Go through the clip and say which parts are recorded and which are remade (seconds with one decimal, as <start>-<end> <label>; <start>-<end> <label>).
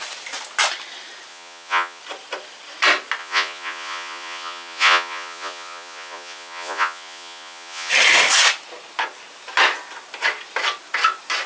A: 0.0-1.3 recorded; 1.3-2.0 remade; 2.0-3.2 recorded; 3.2-7.9 remade; 7.9-11.5 recorded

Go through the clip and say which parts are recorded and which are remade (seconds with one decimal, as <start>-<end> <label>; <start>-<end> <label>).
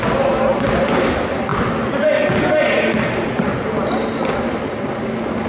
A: 0.0-5.5 recorded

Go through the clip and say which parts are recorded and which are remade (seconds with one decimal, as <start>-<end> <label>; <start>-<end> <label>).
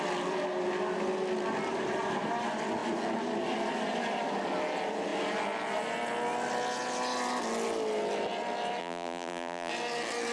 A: 0.0-8.8 recorded; 8.8-9.7 remade; 9.7-10.3 recorded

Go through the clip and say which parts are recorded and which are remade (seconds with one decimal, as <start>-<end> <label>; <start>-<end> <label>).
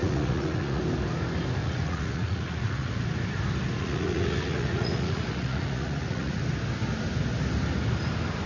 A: 0.0-0.8 remade; 0.8-1.6 recorded; 1.6-2.9 remade; 2.9-3.8 recorded; 3.8-6.4 remade; 6.4-8.5 recorded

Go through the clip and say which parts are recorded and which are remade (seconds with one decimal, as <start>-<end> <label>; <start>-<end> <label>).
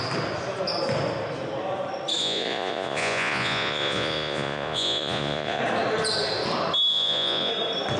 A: 0.0-2.2 recorded; 2.2-5.6 remade; 5.6-6.9 recorded; 6.9-7.5 remade; 7.5-8.0 recorded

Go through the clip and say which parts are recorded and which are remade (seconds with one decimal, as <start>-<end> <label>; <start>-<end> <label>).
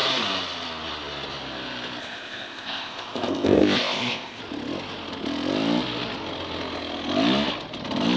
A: 0.0-2.0 recorded; 2.0-4.4 remade; 4.4-8.2 recorded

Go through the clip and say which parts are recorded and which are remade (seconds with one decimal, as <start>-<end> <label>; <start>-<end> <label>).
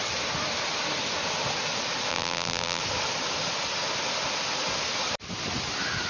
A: 0.0-2.1 recorded; 2.1-2.8 remade; 2.8-6.1 recorded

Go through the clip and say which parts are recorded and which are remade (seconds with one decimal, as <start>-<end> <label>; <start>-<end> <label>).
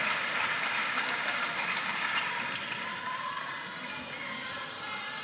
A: 0.0-0.8 recorded; 0.8-2.1 remade; 2.1-5.2 recorded